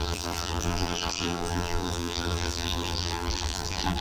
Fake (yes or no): yes